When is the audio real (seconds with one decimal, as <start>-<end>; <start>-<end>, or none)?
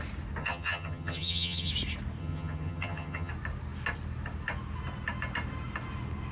0.0-0.4; 1.7-2.2; 3.3-6.3